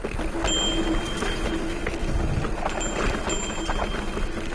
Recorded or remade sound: recorded